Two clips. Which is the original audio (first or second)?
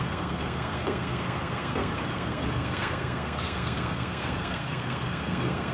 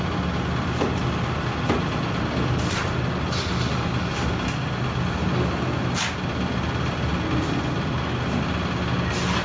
second